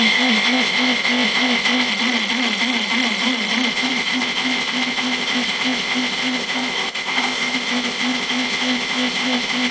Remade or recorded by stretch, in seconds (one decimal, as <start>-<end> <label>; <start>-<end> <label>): 0.0-1.9 remade; 1.9-3.7 recorded; 3.7-9.7 remade